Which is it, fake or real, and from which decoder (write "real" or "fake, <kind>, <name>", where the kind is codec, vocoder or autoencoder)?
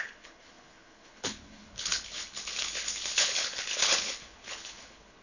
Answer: fake, codec, HILCodec